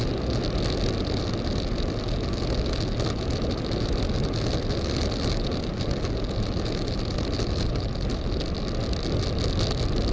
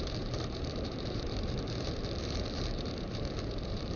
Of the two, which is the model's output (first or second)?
second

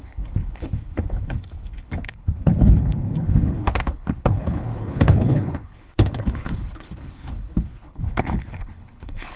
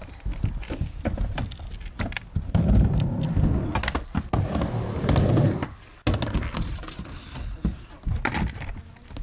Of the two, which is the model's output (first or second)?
first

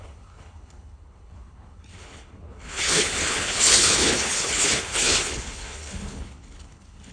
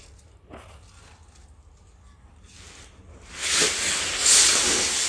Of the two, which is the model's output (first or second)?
first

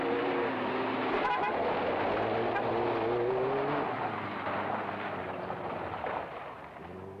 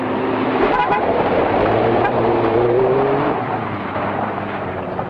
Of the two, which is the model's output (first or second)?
second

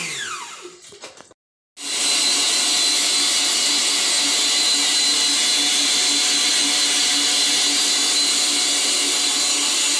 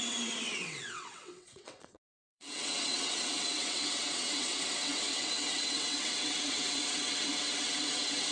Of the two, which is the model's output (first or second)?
second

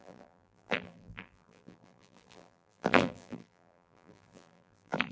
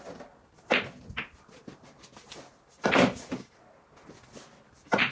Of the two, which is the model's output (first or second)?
first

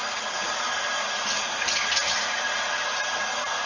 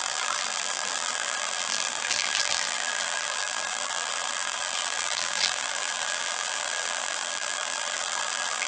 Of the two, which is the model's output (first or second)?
second